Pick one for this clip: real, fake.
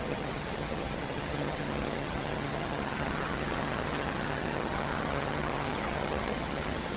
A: fake